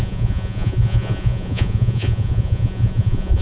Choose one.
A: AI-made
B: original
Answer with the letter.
A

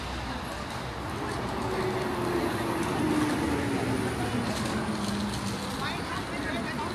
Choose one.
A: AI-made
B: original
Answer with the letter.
B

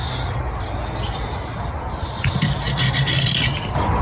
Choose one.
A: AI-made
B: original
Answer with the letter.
B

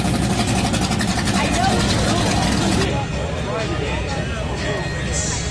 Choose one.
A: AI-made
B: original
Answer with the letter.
B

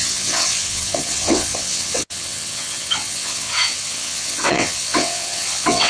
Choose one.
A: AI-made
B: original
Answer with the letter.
A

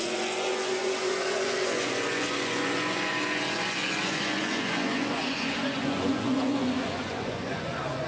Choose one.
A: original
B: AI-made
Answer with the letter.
B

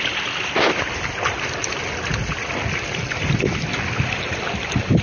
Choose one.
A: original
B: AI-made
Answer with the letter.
A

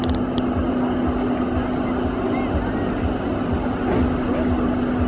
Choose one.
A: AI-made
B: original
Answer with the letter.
B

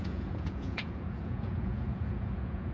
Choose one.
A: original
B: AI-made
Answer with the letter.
B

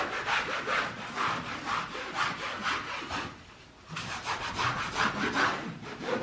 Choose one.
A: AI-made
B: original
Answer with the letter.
B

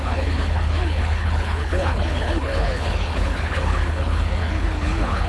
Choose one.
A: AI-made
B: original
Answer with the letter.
A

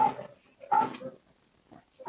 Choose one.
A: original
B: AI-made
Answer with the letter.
A